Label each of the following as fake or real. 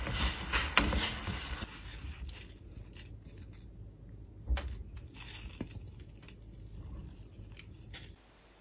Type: real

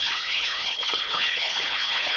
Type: fake